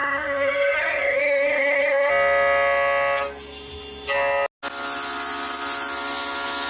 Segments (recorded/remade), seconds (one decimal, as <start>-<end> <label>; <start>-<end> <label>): 0.0-2.1 remade; 2.1-6.7 recorded